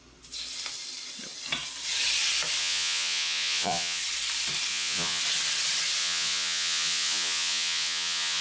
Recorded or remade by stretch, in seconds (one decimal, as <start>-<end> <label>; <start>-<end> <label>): 0.0-2.6 recorded; 2.6-4.0 remade; 4.0-4.7 recorded; 4.7-5.2 remade; 5.2-6.0 recorded; 6.0-8.4 remade